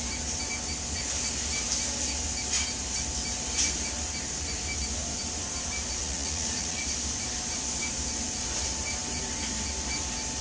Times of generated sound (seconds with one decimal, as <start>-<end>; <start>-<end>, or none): 6.0-6.8